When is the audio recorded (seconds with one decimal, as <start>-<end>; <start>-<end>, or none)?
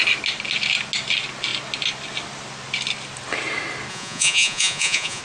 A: 0.0-3.9